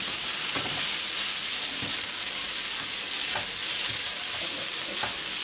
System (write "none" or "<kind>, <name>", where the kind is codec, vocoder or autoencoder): none